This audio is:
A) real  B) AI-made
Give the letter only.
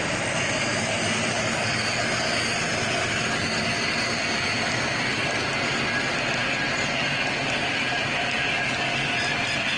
A